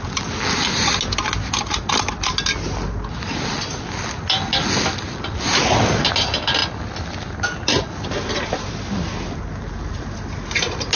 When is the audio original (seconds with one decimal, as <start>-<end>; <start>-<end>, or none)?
0.0-11.0